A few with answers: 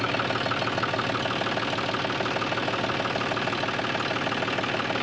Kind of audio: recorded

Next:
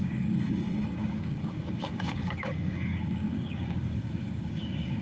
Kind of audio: remade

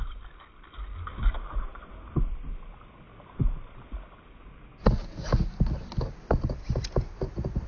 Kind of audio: recorded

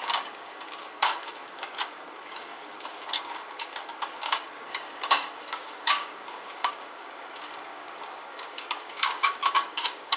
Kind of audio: remade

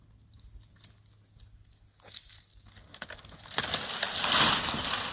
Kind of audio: recorded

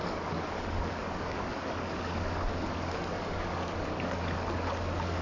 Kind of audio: remade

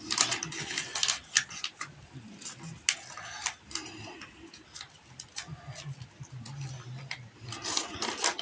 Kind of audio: recorded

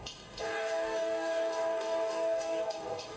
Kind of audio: remade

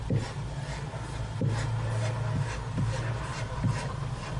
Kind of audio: recorded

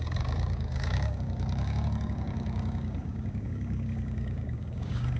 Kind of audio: remade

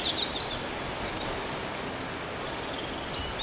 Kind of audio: recorded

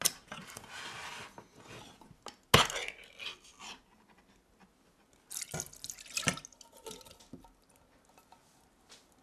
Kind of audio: recorded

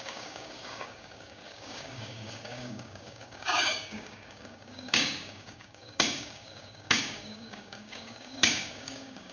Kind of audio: remade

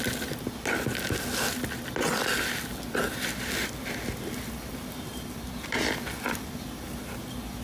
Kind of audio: recorded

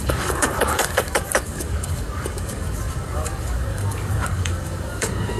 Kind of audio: remade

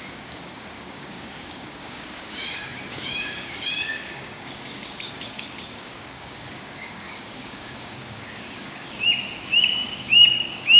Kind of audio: remade